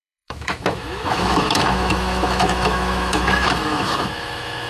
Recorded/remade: remade